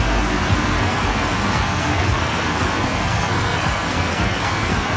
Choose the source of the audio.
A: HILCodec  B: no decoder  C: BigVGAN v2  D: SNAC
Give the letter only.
D